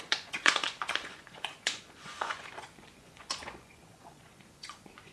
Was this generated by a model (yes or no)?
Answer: yes